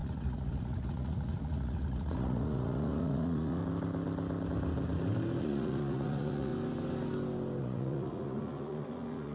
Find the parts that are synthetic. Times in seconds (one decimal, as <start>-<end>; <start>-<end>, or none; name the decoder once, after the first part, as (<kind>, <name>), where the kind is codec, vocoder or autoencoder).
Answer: 0.0-3.6 (vocoder, Vocos); 5.4-6.5; 7.6-9.3